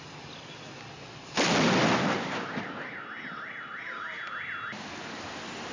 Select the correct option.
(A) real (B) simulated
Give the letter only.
A